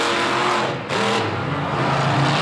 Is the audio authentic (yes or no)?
yes